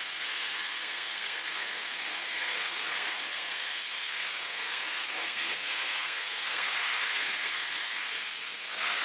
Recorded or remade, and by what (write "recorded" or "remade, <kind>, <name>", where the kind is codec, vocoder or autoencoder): remade, codec, SNAC